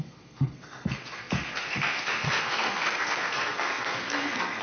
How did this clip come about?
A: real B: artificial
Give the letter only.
B